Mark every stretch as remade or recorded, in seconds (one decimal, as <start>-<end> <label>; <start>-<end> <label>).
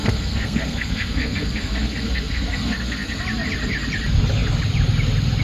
0.0-3.2 remade; 3.2-5.4 recorded